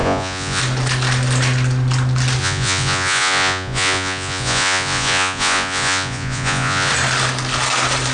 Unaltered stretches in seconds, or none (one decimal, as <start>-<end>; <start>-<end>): 0.6-2.4; 6.9-8.1